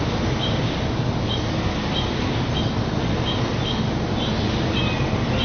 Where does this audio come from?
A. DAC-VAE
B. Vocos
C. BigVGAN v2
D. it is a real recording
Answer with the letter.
D